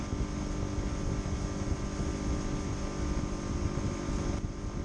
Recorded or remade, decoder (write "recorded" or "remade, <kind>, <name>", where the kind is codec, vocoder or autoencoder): recorded